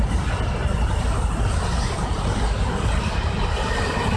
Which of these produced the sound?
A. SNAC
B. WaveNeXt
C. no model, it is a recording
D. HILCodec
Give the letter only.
C